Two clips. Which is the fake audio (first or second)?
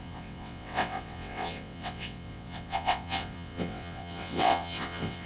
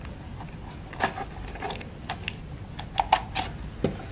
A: first